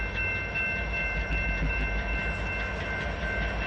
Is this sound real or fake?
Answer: real